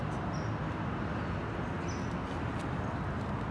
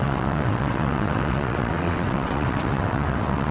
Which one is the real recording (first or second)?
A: first